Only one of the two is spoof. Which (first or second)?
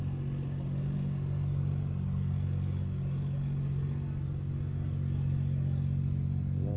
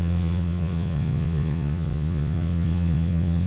second